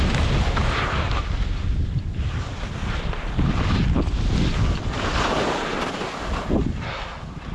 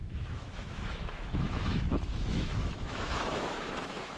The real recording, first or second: first